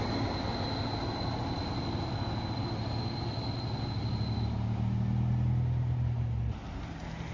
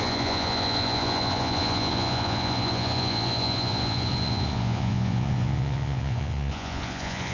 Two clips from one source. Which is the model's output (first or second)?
second